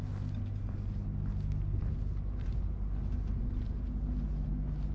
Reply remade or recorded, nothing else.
recorded